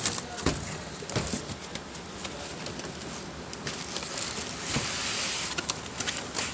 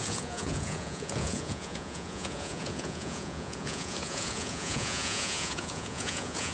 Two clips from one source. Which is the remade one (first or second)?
second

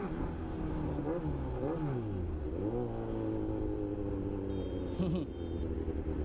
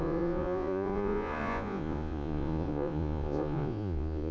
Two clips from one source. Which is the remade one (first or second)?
second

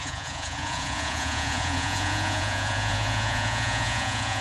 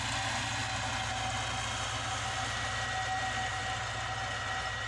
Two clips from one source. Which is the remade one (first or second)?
first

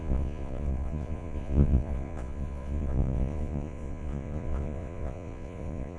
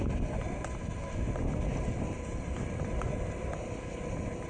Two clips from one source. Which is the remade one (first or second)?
first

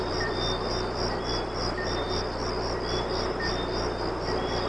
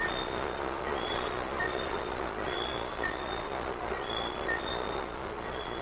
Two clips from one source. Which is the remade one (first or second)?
second